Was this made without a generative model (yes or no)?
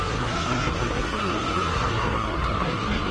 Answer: no